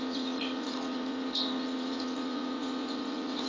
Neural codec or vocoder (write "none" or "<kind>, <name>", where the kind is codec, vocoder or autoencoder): vocoder, Vocos